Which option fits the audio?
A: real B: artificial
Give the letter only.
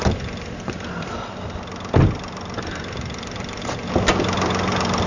A